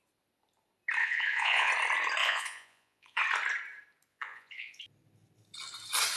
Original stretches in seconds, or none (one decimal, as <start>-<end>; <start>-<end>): 0.0-1.0; 1.7-2.2; 3.2-4.1; 4.8-6.2